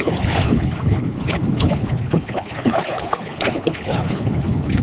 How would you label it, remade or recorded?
remade